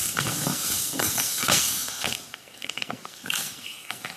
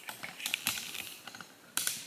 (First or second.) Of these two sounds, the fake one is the first